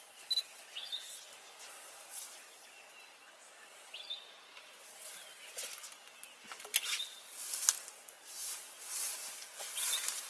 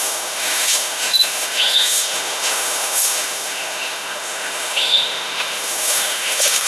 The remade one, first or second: second